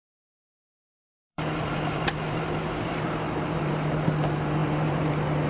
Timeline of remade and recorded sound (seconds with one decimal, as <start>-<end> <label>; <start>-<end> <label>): 0.0-1.1 recorded; 1.1-4.1 remade; 4.1-4.6 recorded; 4.6-5.1 remade; 5.1-5.5 recorded